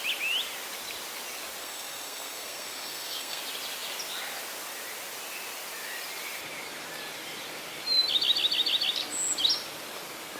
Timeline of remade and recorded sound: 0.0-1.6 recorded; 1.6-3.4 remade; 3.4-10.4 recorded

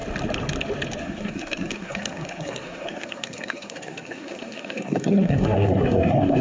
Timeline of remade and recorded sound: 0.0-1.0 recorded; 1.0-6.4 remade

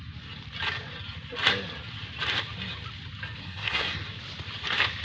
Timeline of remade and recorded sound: 0.0-3.4 recorded; 3.4-4.0 remade; 4.0-5.0 recorded

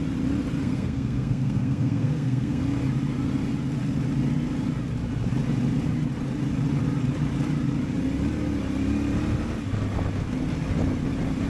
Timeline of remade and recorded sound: 0.0-0.6 recorded; 0.6-2.6 remade; 2.6-11.5 recorded

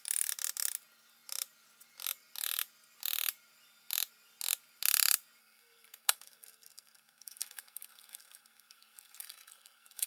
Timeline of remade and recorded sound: 0.0-5.4 recorded; 5.4-10.1 remade

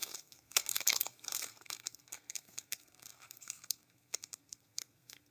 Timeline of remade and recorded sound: 0.0-5.3 remade